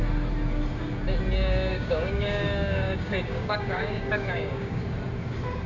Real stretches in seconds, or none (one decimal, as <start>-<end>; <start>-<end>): 0.0-1.7; 4.8-5.7